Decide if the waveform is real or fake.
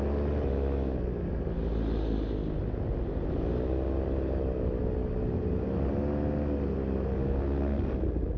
real